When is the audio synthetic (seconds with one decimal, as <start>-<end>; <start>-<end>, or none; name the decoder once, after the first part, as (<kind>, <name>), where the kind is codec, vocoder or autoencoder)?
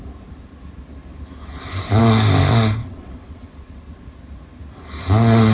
2.8-3.7 (vocoder, WaveNeXt)